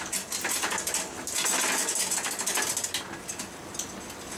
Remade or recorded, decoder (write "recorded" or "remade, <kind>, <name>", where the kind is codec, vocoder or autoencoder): recorded